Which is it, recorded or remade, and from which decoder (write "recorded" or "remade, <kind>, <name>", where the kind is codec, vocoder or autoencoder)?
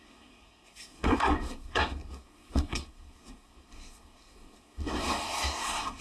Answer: remade, codec, SNAC